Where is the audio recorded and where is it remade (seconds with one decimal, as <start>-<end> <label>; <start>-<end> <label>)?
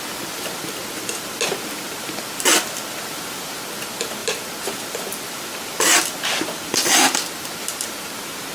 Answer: 0.0-4.2 recorded; 4.2-7.3 remade; 7.3-8.5 recorded